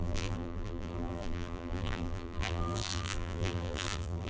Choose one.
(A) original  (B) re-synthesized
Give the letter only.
B